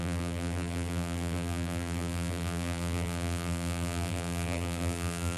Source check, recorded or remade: remade